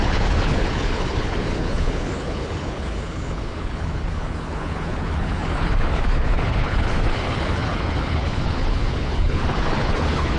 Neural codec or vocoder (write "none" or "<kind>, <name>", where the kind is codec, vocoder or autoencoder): codec, HILCodec